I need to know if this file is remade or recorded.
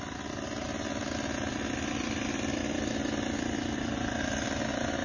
recorded